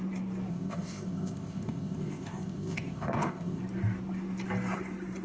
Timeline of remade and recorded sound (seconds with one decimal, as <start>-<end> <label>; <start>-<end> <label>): 0.0-0.5 recorded; 0.5-3.6 remade; 3.6-5.2 recorded